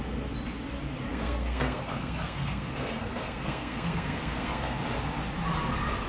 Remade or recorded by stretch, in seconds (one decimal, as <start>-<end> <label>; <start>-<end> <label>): 0.0-1.1 recorded; 1.1-4.8 remade; 4.8-6.1 recorded